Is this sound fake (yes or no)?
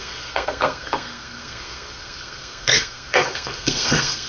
yes